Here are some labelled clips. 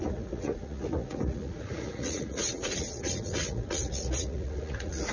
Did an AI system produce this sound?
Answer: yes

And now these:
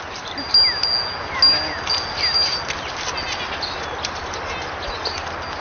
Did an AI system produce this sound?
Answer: no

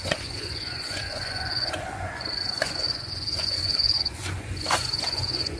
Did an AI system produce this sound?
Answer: yes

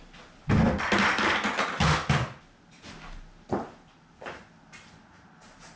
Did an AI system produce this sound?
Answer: no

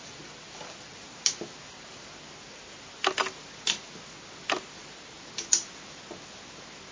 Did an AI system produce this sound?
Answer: no